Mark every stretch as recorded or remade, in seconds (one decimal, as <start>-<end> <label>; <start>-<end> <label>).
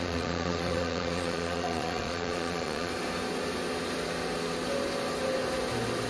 0.0-2.9 remade; 2.9-6.1 recorded